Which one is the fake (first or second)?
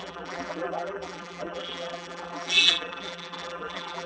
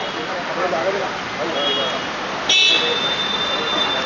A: first